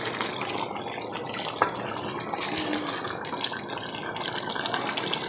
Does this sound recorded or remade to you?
recorded